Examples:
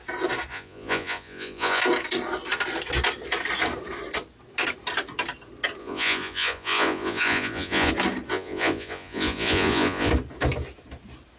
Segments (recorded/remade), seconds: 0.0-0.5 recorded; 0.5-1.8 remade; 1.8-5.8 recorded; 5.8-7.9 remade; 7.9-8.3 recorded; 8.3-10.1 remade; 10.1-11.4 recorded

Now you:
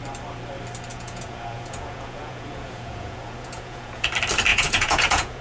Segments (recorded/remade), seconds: 0.0-0.9 recorded; 0.9-4.1 remade; 4.1-4.5 recorded; 4.5-5.4 remade

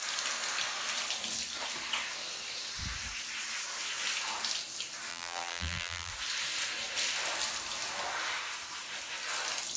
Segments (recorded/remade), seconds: 0.0-5.1 recorded; 5.1-6.1 remade; 6.1-9.8 recorded

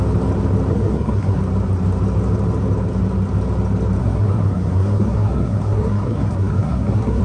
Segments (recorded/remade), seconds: 0.0-0.7 recorded; 0.7-1.4 remade; 1.4-4.0 recorded; 4.0-7.2 remade

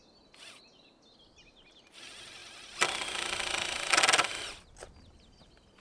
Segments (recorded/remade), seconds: 0.0-5.8 recorded

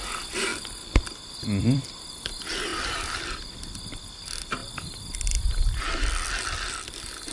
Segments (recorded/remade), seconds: 0.0-2.7 remade; 2.7-3.2 recorded; 3.2-7.3 remade

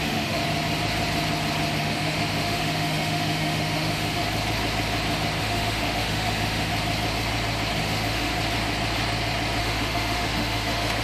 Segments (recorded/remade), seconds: 0.0-0.4 remade; 0.4-1.8 recorded; 1.8-4.2 remade; 4.2-5.4 recorded; 5.4-6.7 remade; 6.7-7.8 recorded; 7.8-8.3 remade; 8.3-9.6 recorded; 9.6-11.0 remade

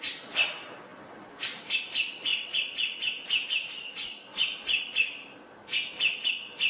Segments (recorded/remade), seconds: 0.0-6.7 recorded